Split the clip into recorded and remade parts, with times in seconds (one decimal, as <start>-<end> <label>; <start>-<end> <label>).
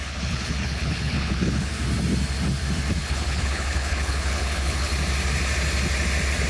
0.0-1.7 remade; 1.7-3.0 recorded; 3.0-4.9 remade; 4.9-6.5 recorded